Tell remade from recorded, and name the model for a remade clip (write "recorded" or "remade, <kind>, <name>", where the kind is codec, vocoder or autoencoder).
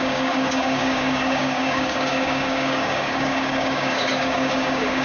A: remade, codec, DAC